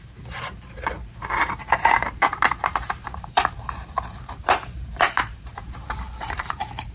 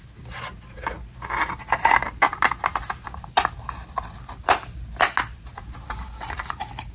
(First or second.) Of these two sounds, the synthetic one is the first